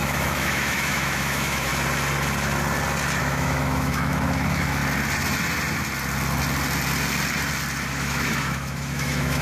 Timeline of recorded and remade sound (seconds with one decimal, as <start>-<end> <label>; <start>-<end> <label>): 0.0-1.7 remade; 1.7-3.2 recorded; 3.2-4.8 remade; 4.8-7.9 recorded; 7.9-9.4 remade

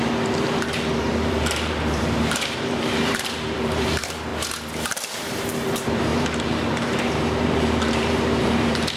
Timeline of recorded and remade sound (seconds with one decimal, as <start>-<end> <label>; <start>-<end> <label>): 0.0-4.3 remade; 4.3-5.2 recorded; 5.2-9.0 remade

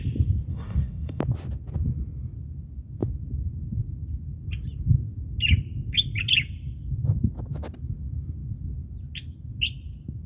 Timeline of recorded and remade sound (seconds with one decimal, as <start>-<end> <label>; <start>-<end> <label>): 0.0-0.5 recorded; 0.5-1.2 remade; 1.2-10.3 recorded

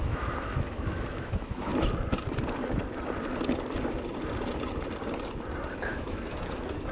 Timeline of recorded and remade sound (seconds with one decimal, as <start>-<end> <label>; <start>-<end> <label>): 0.0-1.7 remade; 1.7-5.8 recorded; 5.8-6.9 remade